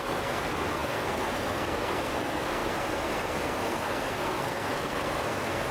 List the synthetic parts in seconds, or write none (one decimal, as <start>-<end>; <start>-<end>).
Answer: 0.0-5.7